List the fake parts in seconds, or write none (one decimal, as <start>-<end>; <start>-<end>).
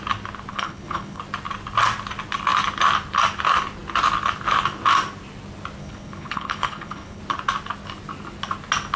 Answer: 0.5-1.2; 5.8-7.2